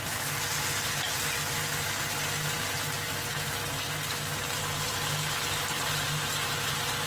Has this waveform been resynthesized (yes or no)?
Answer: no